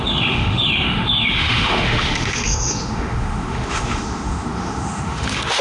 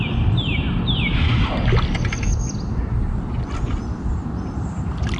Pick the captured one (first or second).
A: second